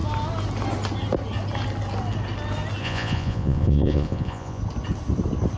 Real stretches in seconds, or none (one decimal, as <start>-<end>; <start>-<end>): 0.0-2.8; 4.6-5.6